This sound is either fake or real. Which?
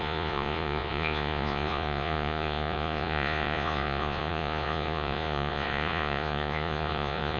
fake